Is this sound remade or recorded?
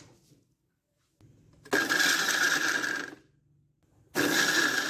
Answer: recorded